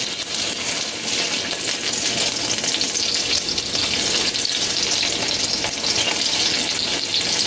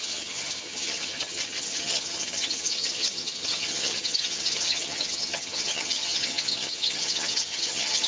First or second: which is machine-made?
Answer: second